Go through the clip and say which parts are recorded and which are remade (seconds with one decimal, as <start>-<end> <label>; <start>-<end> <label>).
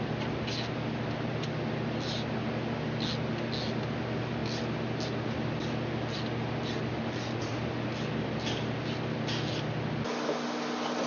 0.0-11.1 recorded